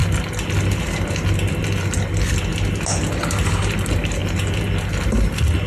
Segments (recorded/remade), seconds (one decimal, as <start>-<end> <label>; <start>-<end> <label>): 0.0-5.7 recorded